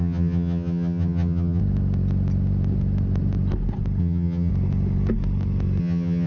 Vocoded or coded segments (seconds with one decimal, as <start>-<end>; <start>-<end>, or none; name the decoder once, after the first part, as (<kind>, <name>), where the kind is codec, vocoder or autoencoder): 0.0-1.6 (vocoder, HiFi-GAN); 4.0-4.5; 5.8-6.3